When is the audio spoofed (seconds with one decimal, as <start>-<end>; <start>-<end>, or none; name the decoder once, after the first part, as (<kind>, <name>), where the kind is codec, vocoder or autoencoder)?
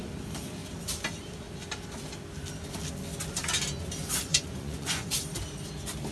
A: 4.3-5.1 (vocoder, Vocos)